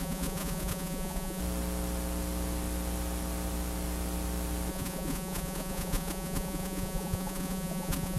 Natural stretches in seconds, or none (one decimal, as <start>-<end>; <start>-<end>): 1.4-4.7